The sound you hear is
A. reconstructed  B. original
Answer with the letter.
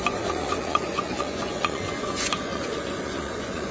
A